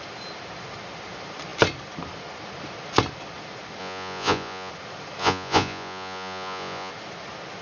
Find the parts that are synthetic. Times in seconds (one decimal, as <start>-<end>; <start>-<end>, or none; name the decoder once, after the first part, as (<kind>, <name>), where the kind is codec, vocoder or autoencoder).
3.8-4.7 (vocoder, Vocos); 5.2-6.9